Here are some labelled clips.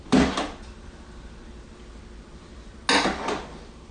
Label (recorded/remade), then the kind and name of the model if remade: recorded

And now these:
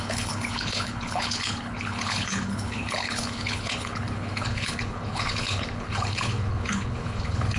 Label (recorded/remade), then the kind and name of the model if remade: remade, codec, HILCodec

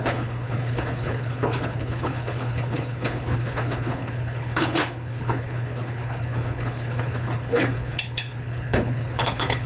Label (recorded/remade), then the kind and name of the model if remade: remade, codec, HILCodec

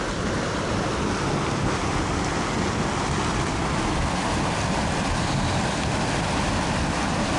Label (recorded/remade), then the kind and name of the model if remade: recorded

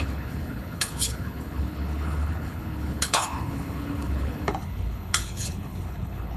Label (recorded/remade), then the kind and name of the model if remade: remade, codec, HILCodec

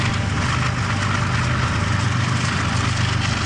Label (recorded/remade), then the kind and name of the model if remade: recorded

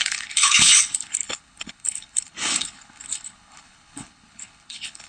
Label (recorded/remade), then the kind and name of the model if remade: remade, codec, HILCodec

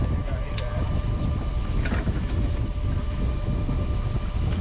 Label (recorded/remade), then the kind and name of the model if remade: recorded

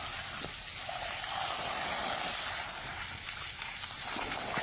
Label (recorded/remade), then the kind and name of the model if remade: recorded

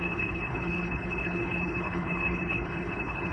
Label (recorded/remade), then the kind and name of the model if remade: remade, codec, HILCodec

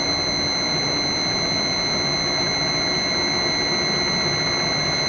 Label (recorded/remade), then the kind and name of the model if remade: recorded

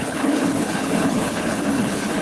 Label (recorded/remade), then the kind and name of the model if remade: remade, codec, HILCodec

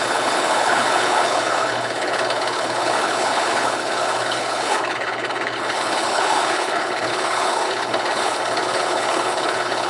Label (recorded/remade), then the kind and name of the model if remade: remade, codec, HILCodec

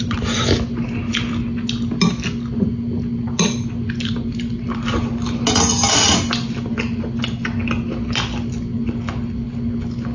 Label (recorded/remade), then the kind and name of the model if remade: recorded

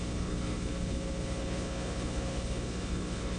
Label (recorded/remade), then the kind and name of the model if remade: remade, codec, HILCodec